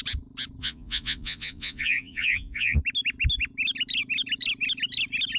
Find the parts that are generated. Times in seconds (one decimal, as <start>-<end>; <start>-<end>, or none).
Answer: 0.6-2.8